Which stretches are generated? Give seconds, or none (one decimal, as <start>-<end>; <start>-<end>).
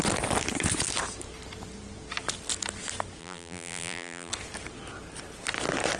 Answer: 3.2-4.3